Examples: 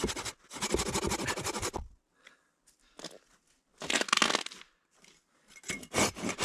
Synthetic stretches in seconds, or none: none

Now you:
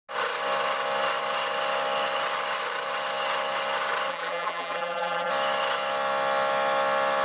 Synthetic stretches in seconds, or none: 4.1-5.3 (vocoder, BigVGAN v2)

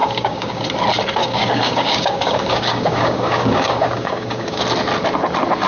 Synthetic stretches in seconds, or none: 0.0-0.6 (codec, DAC); 1.2-4.6

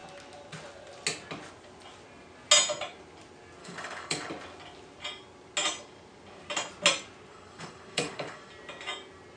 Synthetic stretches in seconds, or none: 3.6-4.3 (codec, DAC); 7.3-8.5

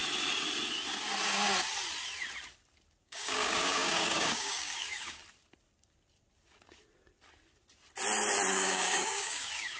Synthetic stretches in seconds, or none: 3.0-5.2 (codec, DAC); 8.5-9.8

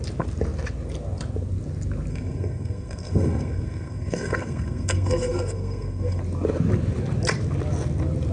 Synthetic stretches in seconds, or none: 2.1-6.2 (codec, SNAC)

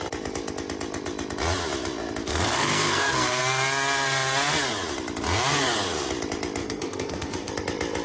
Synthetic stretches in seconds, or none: 2.2-3.4 (codec, SNAC); 6.6-7.5

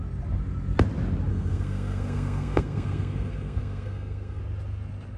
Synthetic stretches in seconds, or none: 1.3-4.4 (codec, SNAC)